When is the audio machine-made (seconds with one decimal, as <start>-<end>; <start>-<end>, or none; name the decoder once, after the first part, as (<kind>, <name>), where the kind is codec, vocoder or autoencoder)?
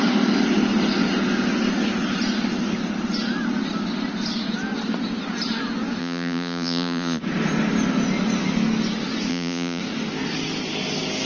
6.0-7.2 (vocoder, Vocos); 9.3-9.8